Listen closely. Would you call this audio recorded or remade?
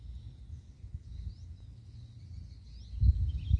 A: recorded